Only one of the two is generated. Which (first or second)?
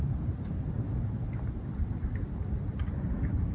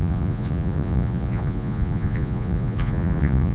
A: second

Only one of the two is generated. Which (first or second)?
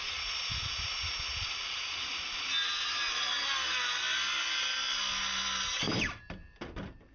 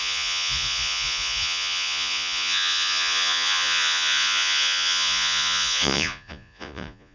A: second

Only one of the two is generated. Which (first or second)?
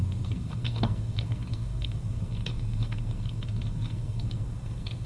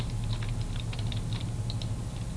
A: first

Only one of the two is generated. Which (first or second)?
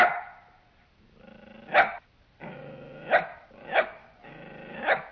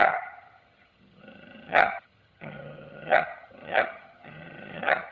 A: second